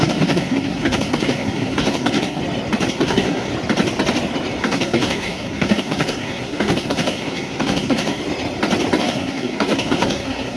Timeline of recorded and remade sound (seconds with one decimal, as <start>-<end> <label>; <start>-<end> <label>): 0.0-2.4 remade; 2.4-2.9 recorded; 2.9-3.5 remade; 3.5-4.6 recorded; 4.6-8.2 remade; 8.2-9.0 recorded; 9.0-10.6 remade